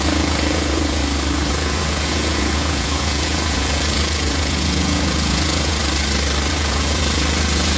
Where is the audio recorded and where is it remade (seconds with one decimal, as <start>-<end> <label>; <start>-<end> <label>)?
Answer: 0.0-1.0 remade; 1.0-1.5 recorded; 1.5-5.8 remade; 5.8-6.5 recorded; 6.5-7.8 remade